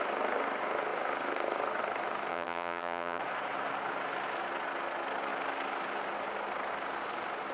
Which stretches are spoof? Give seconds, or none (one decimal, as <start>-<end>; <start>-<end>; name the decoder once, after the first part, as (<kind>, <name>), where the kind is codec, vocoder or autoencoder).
2.3-3.2 (vocoder, HiFi-GAN)